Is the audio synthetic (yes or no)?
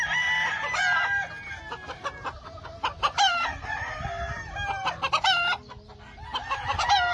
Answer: no